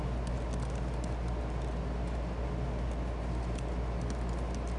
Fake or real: real